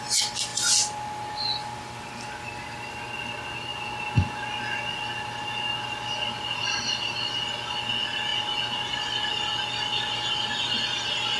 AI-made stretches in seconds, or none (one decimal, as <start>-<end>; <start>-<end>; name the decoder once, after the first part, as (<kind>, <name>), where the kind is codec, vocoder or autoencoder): 0.5-3.0 (vocoder, BigVGAN v2)